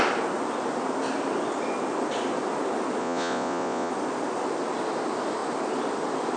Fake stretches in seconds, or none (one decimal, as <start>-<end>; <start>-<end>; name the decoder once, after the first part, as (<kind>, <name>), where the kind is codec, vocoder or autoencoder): 3.0-3.9 (vocoder, Vocos)